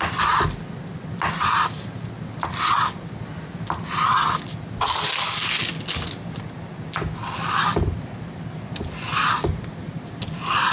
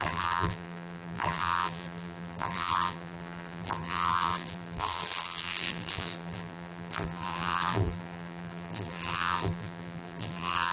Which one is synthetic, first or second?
second